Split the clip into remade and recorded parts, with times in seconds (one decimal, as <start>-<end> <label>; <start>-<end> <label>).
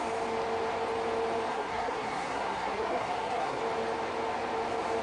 0.0-1.5 recorded; 1.5-3.6 remade; 3.6-5.0 recorded